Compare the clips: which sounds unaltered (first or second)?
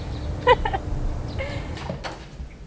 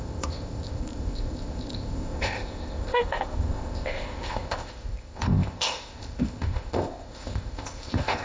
first